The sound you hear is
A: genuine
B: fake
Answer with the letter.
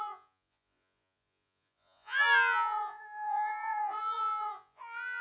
B